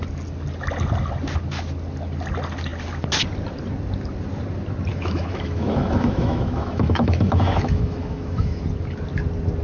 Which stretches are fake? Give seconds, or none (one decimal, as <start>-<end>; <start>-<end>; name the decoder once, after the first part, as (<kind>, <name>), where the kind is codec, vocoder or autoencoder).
4.9-8.6 (autoencoder, DAC-VAE)